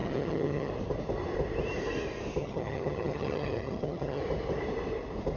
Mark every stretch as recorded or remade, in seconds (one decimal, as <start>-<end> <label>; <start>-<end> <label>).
0.0-0.7 remade; 0.7-2.4 recorded; 2.4-4.2 remade; 4.2-5.4 recorded